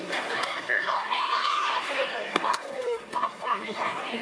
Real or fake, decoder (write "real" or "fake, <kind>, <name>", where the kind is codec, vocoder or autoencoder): fake, codec, SNAC